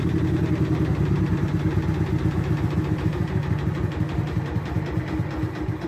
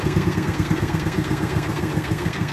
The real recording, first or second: first